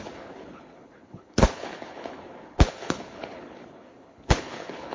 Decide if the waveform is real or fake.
fake